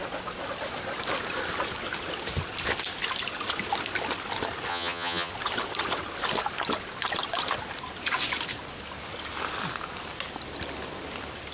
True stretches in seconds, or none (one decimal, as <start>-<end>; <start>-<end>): 0.0-4.7; 5.3-11.5